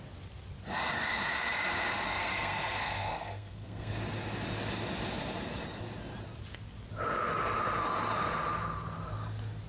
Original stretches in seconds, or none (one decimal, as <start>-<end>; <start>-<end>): 0.0-2.1; 4.0-9.7